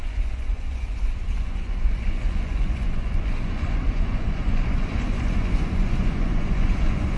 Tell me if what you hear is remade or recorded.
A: remade